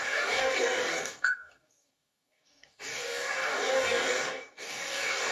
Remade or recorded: remade